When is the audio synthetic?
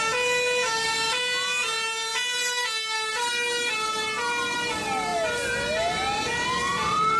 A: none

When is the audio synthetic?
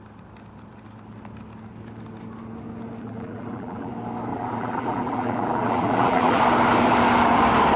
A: 3.0-3.9 (vocoder, BigVGAN v2); 4.3-6.4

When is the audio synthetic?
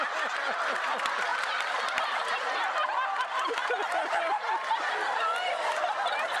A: 1.3-2.7 (vocoder, BigVGAN v2)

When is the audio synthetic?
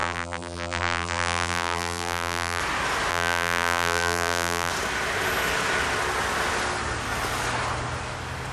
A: 0.0-2.6 (vocoder, BigVGAN v2); 3.1-4.7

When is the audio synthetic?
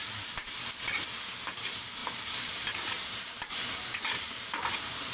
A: 2.0-5.1 (vocoder, BigVGAN v2)